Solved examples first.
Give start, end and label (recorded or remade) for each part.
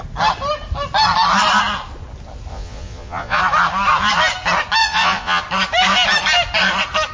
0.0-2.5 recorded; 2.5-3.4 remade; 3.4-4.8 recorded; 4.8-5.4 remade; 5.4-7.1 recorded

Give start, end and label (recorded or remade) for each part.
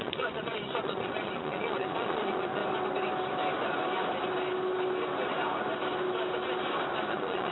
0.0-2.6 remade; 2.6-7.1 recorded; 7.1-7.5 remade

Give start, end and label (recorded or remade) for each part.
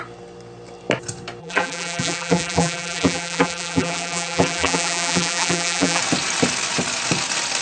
0.0-1.4 recorded; 1.4-6.0 remade; 6.0-7.6 recorded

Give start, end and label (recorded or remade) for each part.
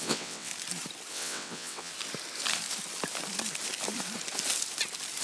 0.0-0.5 remade; 0.5-1.1 recorded; 1.1-1.9 remade; 1.9-5.2 recorded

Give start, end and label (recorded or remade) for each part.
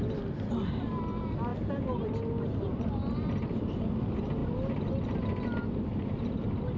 0.0-6.8 recorded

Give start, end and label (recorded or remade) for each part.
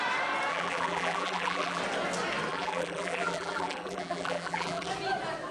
0.0-0.5 recorded; 0.5-1.8 remade; 1.8-2.5 recorded; 2.5-4.9 remade; 4.9-5.5 recorded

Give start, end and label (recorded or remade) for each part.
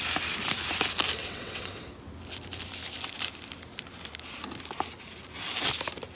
0.0-1.2 recorded; 1.2-1.8 remade; 1.8-6.1 recorded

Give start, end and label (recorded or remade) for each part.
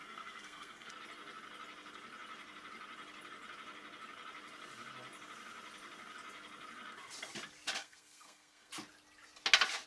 0.0-0.9 remade; 0.9-7.8 recorded; 7.8-8.7 remade; 8.7-9.9 recorded